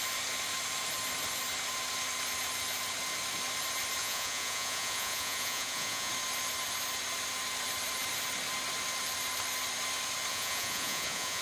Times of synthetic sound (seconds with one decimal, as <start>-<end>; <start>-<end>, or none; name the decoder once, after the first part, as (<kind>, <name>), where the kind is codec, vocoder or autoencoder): 4.0-6.1 (vocoder, Vocos); 10.3-11.4